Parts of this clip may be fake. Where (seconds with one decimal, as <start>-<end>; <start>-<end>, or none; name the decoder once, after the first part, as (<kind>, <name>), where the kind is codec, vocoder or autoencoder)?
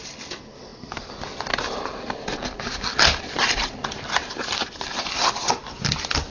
none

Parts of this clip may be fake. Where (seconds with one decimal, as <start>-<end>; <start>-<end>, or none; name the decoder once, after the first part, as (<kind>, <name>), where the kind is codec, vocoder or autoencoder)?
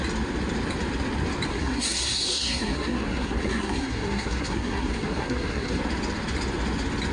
1.5-5.8 (codec, SNAC)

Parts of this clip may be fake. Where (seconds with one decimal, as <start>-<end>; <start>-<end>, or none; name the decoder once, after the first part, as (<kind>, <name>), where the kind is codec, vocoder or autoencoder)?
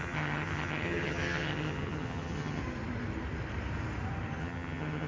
0.0-2.6 (vocoder, HiFi-GAN); 4.4-5.1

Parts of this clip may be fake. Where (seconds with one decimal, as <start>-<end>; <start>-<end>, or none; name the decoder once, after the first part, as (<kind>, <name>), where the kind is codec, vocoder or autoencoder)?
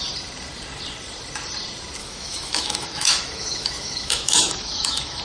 2.0-5.2 (autoencoder, DAC-VAE)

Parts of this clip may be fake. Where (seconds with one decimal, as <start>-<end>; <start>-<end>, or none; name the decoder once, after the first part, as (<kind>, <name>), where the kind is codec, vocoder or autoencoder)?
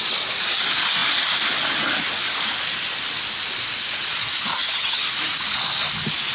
4.5-5.1 (vocoder, HiFi-GAN)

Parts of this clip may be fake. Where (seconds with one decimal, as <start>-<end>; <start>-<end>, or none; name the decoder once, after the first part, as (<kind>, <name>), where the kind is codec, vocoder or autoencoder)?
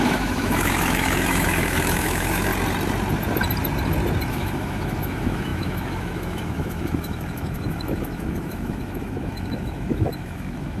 0.0-2.5 (autoencoder, DAC-VAE); 4.3-10.8